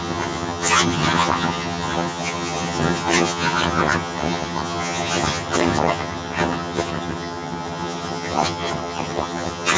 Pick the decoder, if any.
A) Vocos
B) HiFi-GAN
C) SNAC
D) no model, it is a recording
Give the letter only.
B